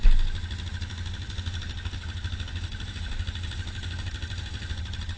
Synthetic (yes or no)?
no